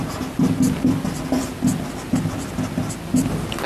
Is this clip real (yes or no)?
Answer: yes